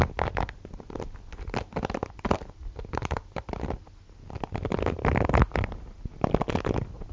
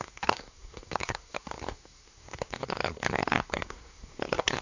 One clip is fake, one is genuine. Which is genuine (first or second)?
first